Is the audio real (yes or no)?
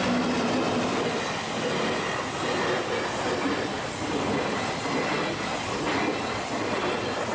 yes